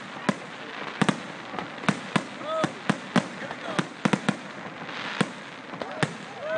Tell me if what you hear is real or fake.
real